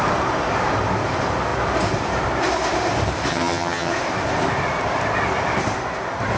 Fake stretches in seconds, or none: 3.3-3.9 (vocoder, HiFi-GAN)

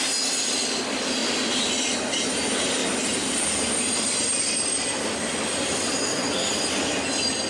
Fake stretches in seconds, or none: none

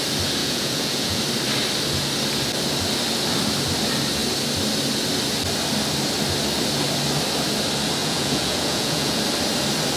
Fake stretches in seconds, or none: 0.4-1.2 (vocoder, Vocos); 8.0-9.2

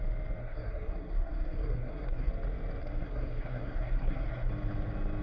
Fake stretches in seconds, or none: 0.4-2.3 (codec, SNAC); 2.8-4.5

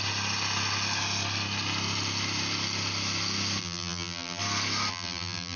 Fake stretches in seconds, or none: 3.6-4.4 (vocoder, BigVGAN v2); 4.9-5.6

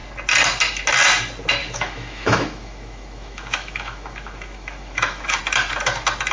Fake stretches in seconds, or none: 1.6-5.4 (autoencoder, DAC-VAE)

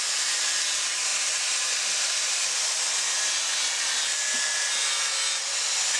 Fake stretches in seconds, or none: none

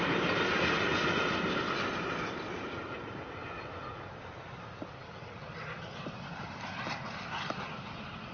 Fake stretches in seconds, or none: none